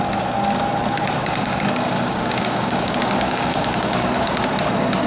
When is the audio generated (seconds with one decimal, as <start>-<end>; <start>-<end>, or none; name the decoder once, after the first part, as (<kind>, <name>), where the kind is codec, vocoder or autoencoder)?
1.2-4.3 (codec, DAC)